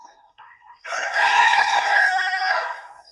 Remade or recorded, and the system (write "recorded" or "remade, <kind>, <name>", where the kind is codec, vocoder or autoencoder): remade, codec, SNAC